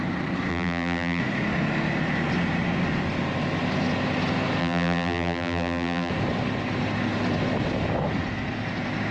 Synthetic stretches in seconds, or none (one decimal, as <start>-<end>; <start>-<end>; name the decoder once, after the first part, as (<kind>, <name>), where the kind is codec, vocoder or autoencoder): 0.5-1.2 (vocoder, BigVGAN v2); 4.6-6.1

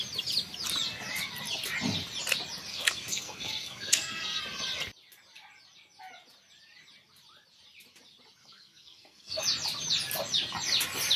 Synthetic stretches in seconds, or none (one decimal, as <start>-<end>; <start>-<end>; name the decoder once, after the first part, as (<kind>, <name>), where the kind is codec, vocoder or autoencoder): 2.7-4.4 (codec, SNAC); 8.4-9.4